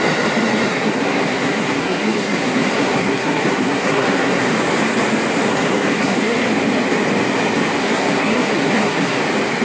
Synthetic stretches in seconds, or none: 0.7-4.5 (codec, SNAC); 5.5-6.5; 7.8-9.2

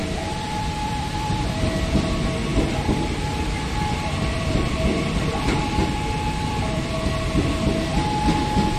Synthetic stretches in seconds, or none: 0.0-2.1 (vocoder, BigVGAN v2); 2.5-7.0

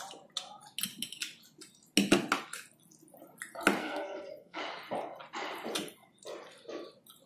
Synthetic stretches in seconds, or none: 3.8-4.6 (codec, SNAC)

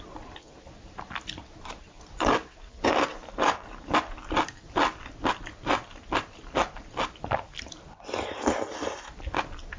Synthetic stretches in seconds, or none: none